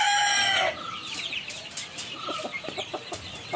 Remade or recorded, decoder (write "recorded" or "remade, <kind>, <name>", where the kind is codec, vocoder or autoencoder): recorded